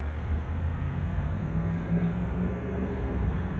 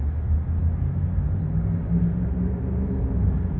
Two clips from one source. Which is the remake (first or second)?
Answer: first